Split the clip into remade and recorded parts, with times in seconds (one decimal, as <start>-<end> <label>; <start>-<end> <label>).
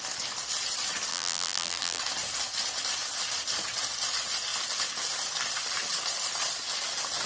0.0-1.1 recorded; 1.1-2.0 remade; 2.0-7.3 recorded